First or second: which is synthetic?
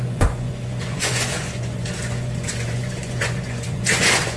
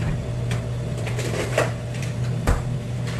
first